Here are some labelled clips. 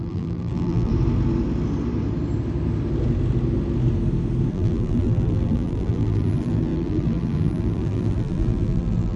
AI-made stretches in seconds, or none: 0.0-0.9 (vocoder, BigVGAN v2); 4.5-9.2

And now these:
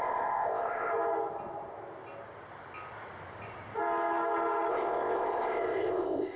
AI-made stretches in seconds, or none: 0.0-0.9 (codec, ZipCodec); 4.7-6.4

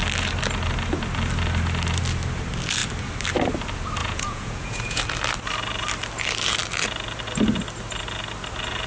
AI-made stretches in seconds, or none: 4.0-5.0 (vocoder, Vocos)

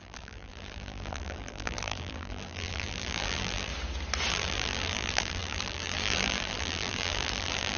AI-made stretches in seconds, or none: 0.0-3.7 (vocoder, BigVGAN v2); 4.3-7.8

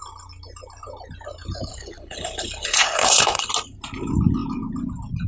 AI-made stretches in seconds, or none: 1.7-3.5 (codec, HILCodec)

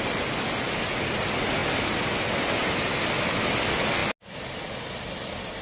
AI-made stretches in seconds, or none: none

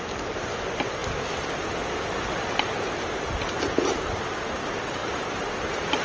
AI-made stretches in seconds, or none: none